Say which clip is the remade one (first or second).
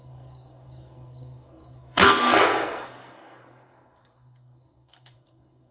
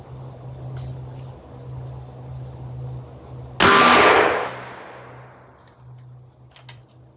first